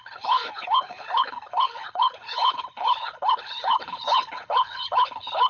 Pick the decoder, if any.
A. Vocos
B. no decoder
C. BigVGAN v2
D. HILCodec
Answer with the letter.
D